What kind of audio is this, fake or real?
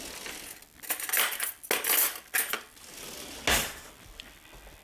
real